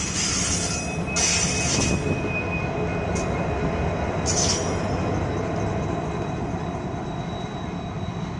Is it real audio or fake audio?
real